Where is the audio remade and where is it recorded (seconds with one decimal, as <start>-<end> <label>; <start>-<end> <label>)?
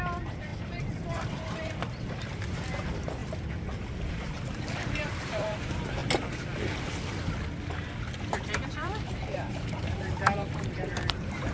0.0-3.2 remade; 3.2-4.1 recorded; 4.1-6.0 remade; 6.0-8.7 recorded; 8.7-11.5 remade